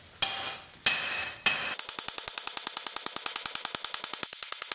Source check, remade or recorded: recorded